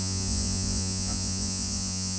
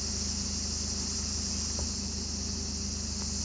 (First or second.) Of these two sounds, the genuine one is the second